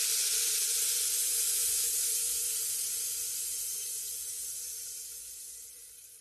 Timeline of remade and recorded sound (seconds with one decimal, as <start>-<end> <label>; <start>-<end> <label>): 0.0-6.2 recorded